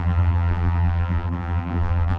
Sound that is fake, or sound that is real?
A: fake